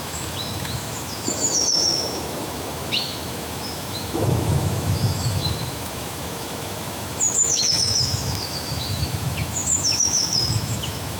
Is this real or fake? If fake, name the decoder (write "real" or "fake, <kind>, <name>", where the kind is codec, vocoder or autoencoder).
fake, autoencoder, DAC-VAE